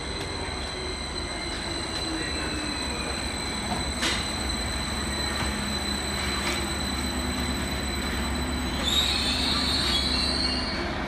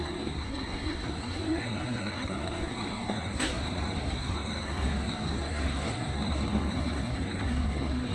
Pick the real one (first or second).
first